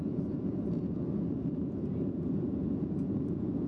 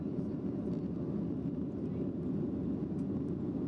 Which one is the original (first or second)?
second